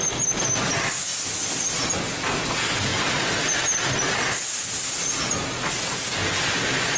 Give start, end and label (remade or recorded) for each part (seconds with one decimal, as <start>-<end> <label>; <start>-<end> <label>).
0.0-7.0 recorded